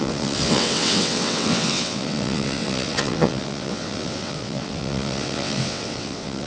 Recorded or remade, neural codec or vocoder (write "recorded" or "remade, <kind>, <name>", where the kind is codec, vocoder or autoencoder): remade, vocoder, WaveNeXt